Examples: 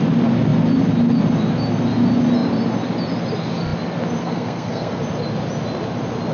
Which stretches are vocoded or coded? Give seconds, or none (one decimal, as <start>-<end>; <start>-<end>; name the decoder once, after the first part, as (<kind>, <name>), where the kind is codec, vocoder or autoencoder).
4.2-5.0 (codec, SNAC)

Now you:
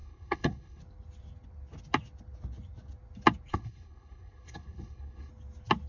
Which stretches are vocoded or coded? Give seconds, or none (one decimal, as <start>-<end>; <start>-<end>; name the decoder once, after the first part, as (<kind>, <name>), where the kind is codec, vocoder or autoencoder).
0.0-0.8 (codec, HILCodec); 3.5-5.3

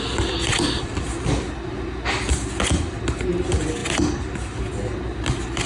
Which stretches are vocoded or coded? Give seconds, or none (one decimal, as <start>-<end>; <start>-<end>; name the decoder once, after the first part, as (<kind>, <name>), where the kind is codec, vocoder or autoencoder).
none

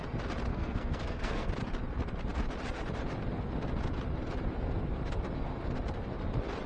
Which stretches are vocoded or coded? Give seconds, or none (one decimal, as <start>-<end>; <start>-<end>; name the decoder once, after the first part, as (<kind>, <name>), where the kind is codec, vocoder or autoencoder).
0.5-1.5 (codec, SNAC)

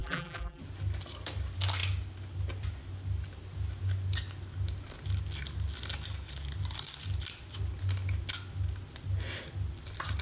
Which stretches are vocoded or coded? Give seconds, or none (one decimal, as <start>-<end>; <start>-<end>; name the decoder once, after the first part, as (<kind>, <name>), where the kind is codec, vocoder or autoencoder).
0.0-0.6 (vocoder, BigVGAN v2)

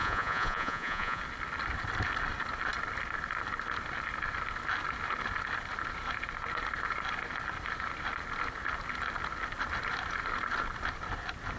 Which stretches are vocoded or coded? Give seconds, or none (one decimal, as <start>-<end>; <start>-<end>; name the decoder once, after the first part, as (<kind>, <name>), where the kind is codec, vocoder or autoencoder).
0.0-1.2 (vocoder, Vocos)